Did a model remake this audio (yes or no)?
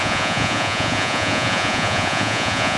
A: yes